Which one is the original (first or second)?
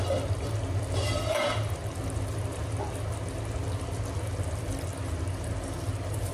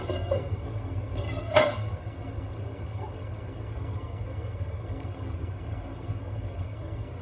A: first